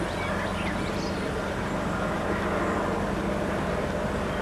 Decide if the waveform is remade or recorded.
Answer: recorded